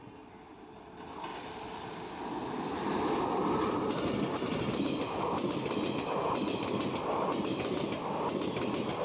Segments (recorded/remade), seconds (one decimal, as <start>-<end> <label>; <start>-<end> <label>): 0.0-9.0 recorded